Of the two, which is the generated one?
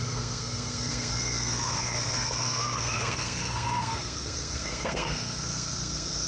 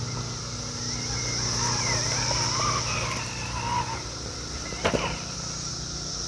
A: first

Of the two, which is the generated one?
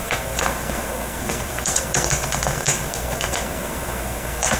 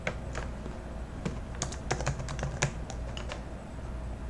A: first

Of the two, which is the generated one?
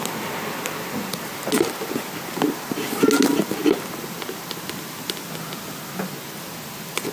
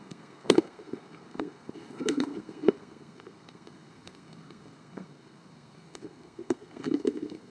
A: second